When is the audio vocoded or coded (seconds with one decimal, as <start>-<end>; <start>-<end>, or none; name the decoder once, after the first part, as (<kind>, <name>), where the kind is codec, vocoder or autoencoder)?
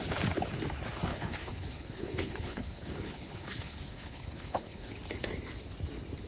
1.1-4.9 (codec, HILCodec)